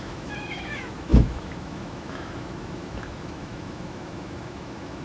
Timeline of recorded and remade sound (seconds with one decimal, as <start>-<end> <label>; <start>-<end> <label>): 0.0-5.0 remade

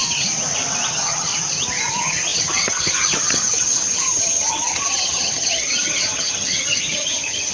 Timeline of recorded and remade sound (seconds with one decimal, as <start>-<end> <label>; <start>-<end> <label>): 0.0-0.9 recorded; 0.9-1.3 remade; 1.3-1.9 recorded; 1.9-7.5 remade

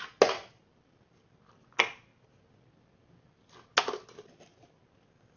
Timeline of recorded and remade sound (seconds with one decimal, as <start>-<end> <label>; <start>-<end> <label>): 0.0-5.4 recorded

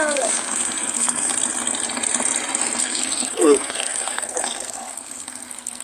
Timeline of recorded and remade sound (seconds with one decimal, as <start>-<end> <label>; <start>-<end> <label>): 0.0-1.3 remade; 1.3-2.8 recorded; 2.8-5.8 remade

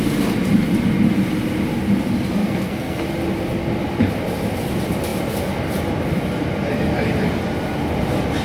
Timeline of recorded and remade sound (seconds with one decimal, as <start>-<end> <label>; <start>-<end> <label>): 0.0-2.4 recorded; 2.4-3.0 remade; 3.0-8.4 recorded

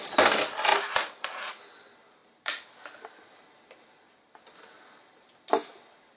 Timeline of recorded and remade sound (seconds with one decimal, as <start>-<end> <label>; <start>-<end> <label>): 0.0-0.7 recorded; 0.7-1.5 remade; 1.5-2.2 recorded; 2.2-3.0 remade; 3.0-6.2 recorded

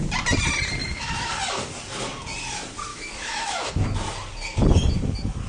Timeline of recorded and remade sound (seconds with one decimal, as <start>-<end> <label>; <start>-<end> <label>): 0.0-0.8 recorded; 0.8-1.3 remade; 1.3-2.9 recorded; 2.9-3.7 remade; 3.7-5.5 recorded

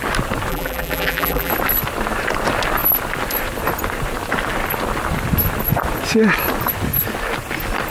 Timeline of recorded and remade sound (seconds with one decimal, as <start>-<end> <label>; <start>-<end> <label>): 0.0-0.5 recorded; 0.5-1.5 remade; 1.5-7.9 recorded